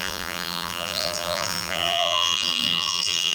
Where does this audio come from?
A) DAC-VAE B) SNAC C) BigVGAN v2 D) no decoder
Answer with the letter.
C